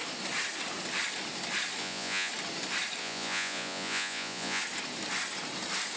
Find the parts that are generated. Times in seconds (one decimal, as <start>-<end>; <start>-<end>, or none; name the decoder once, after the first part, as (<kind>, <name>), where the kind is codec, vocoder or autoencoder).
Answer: 1.8-2.3 (vocoder, Vocos); 3.0-4.6